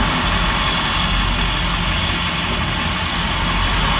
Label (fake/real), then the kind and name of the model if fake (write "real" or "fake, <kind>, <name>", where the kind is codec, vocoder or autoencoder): real